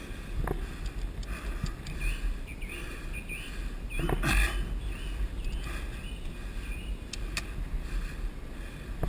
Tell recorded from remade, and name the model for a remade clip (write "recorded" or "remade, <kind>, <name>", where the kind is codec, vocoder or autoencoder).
recorded